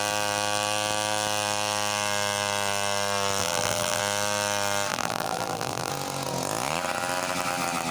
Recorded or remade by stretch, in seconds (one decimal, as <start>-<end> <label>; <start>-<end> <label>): 0.0-3.4 recorded; 3.4-4.0 remade; 4.0-4.9 recorded; 4.9-5.9 remade; 5.9-7.9 recorded